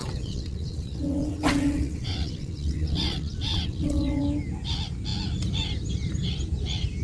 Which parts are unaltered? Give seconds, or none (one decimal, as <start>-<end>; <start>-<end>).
4.2-7.0